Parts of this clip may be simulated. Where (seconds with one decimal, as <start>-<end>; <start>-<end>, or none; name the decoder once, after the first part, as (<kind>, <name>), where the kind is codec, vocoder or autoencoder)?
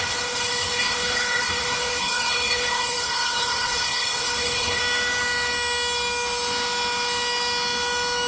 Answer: 0.0-4.8 (codec, HILCodec)